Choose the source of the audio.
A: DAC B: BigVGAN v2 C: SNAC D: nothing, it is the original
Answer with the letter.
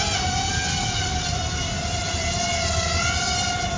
D